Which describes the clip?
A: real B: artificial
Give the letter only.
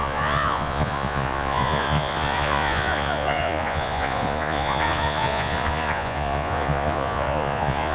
B